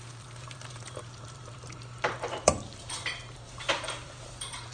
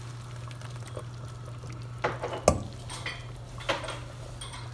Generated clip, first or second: first